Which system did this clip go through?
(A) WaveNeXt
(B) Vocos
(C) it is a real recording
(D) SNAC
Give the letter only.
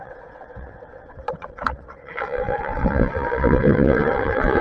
A